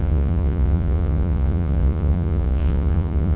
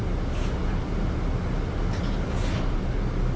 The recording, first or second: second